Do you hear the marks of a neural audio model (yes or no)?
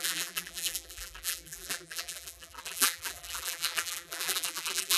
yes